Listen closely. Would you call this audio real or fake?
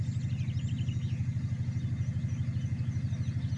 real